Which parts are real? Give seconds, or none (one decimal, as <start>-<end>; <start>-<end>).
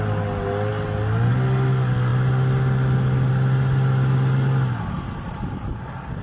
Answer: 0.0-6.2